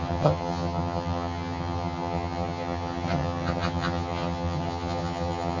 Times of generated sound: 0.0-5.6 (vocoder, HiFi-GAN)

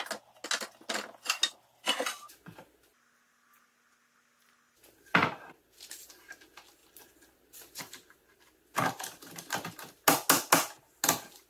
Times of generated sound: none

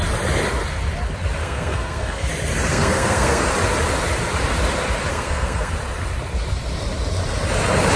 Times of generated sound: 1.4-2.3 (codec, SNAC); 2.7-3.5; 5.1-5.7

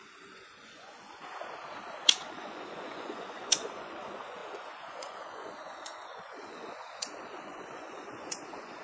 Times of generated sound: 0.0-1.3 (vocoder, Vocos); 2.3-8.8

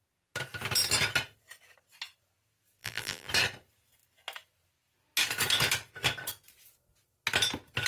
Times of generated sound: 2.8-3.3 (vocoder, BigVGAN v2)

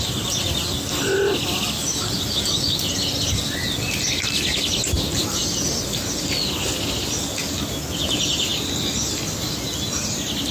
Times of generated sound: none